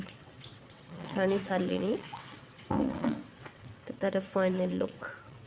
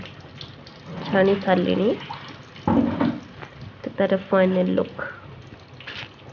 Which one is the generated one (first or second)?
first